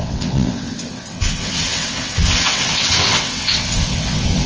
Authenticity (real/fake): fake